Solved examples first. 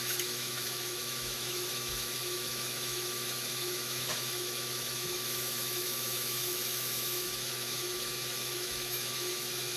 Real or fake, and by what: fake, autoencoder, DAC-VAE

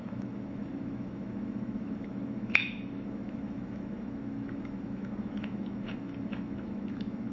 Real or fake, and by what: fake, autoencoder, DAC-VAE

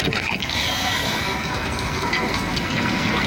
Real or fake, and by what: fake, codec, SNAC